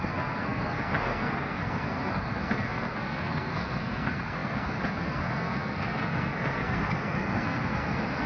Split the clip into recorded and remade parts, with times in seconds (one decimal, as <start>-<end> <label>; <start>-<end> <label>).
0.0-8.3 remade